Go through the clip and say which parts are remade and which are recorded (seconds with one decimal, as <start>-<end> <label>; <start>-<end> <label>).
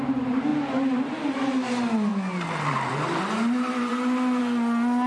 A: 0.0-5.1 recorded